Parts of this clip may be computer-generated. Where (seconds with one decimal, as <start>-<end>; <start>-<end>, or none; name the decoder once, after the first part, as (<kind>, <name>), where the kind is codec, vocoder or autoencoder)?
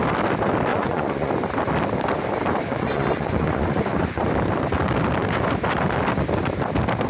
0.7-1.3 (vocoder, Vocos); 2.7-4.3